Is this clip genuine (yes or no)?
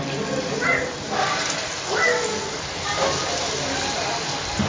yes